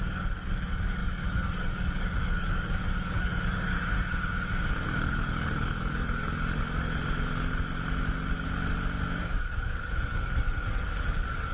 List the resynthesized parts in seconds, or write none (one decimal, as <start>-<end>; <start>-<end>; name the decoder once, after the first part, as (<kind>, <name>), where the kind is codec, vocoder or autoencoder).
0.0-3.7 (codec, DAC); 4.7-6.9; 9.2-11.5